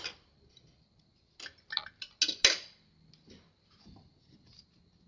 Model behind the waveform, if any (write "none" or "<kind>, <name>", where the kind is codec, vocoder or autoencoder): none